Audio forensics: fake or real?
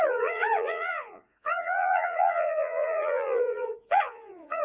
fake